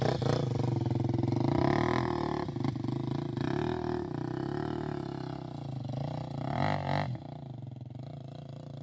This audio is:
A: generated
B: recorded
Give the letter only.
B